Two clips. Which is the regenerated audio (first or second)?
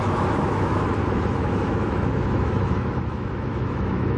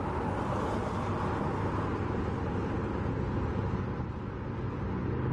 first